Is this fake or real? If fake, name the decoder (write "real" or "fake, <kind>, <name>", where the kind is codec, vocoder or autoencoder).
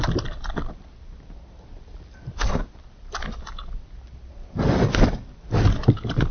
real